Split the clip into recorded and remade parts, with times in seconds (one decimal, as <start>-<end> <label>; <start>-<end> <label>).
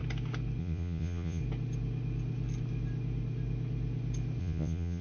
0.0-0.6 recorded; 0.6-1.4 remade; 1.4-4.4 recorded; 4.4-5.0 remade